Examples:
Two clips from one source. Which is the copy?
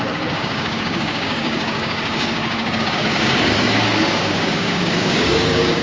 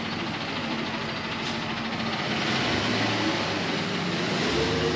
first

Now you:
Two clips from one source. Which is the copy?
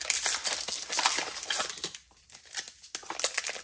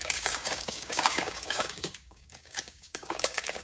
second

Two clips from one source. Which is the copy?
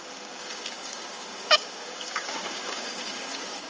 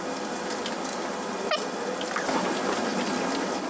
first